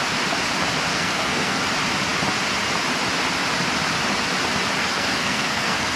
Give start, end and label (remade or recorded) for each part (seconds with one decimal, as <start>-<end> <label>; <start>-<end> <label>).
0.0-0.9 recorded; 0.9-1.6 remade; 1.6-4.8 recorded; 4.8-6.0 remade